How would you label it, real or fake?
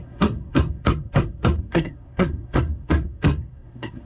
fake